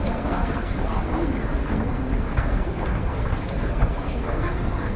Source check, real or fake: fake